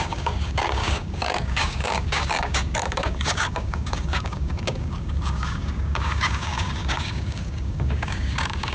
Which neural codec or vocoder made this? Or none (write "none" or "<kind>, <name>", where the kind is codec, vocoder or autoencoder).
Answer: codec, DAC